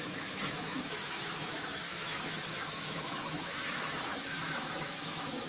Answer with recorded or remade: remade